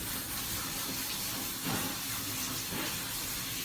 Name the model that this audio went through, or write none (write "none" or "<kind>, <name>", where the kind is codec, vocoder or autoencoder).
none